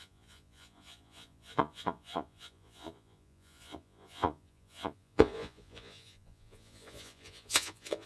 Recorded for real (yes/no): no